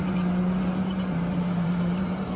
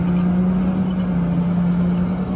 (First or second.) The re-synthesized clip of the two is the first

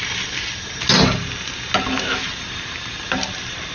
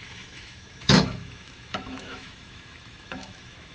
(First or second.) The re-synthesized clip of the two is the second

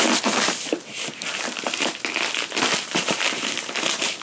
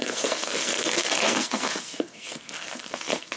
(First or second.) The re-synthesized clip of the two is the second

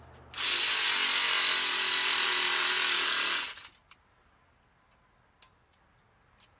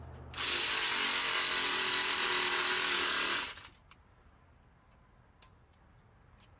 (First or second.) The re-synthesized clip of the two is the second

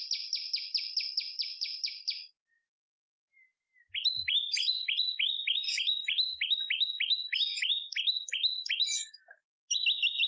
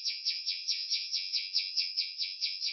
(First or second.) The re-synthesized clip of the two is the second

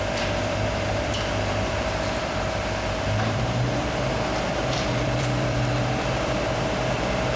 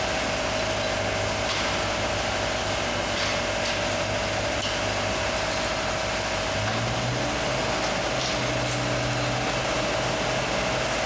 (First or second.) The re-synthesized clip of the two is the first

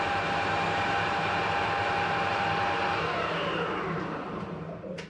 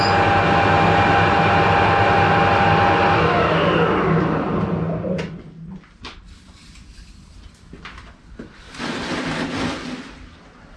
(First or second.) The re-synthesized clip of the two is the first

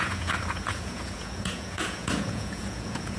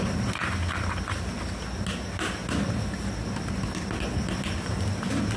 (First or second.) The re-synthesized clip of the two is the first